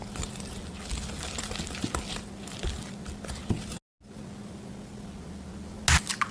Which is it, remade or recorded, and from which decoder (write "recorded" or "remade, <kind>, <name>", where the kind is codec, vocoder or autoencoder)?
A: recorded